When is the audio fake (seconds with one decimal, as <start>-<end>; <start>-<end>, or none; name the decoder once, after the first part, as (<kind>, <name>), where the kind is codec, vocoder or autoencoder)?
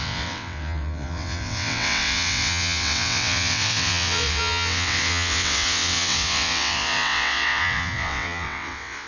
0.0-9.1 (vocoder, WaveNeXt)